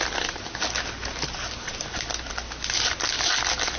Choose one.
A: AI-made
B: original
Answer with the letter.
B